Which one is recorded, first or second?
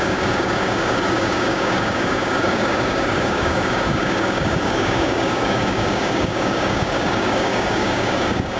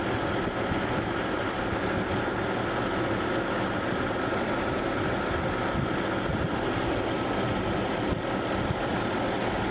second